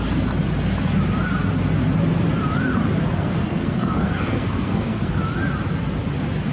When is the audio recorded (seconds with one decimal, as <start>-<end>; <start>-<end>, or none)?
0.0-3.2; 5.2-6.5